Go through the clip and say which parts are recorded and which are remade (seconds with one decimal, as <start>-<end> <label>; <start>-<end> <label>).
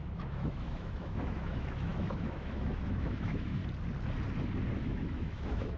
0.0-3.6 remade; 3.6-4.8 recorded; 4.8-5.8 remade